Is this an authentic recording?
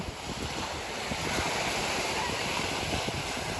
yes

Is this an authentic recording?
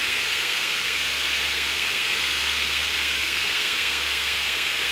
no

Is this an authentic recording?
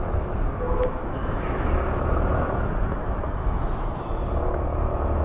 no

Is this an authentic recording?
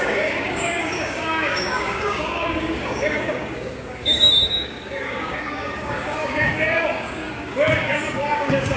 no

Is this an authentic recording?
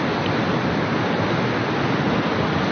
yes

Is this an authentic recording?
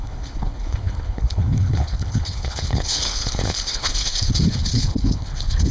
no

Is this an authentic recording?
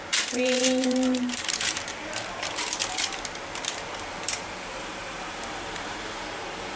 no